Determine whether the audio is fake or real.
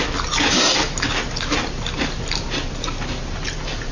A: real